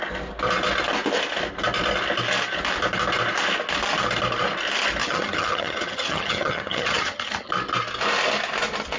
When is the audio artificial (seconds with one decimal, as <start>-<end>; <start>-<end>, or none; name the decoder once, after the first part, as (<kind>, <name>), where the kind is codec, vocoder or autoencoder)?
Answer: 5.0-7.5 (vocoder, HiFi-GAN)

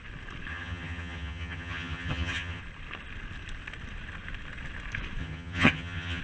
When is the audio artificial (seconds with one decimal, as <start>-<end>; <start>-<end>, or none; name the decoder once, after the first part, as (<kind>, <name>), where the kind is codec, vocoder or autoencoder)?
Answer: 0.5-2.6 (vocoder, HiFi-GAN); 5.2-6.2

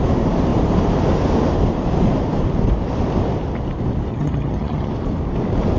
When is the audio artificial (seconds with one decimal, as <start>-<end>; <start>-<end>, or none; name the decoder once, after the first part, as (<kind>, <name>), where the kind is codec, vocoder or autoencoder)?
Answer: 4.1-4.9 (vocoder, HiFi-GAN)